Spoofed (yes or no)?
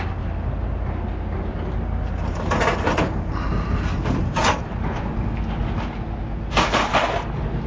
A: no